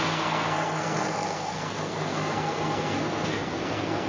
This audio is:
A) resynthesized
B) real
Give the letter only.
A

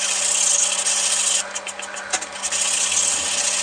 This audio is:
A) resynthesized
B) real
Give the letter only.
B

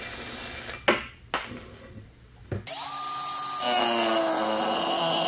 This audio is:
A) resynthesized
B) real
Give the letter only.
B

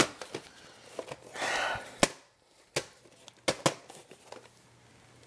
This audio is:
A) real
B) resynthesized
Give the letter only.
A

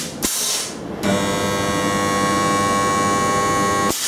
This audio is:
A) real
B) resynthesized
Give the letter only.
A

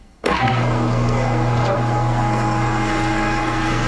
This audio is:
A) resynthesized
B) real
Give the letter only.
A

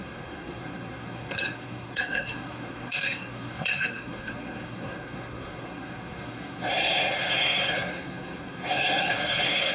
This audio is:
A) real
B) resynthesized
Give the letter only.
B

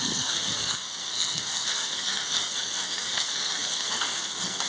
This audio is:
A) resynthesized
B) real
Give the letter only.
A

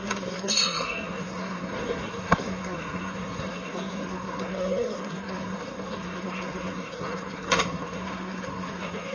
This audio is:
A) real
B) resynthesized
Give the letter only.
B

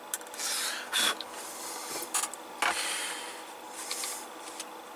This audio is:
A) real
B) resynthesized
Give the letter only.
A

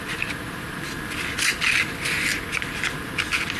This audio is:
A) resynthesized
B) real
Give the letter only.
B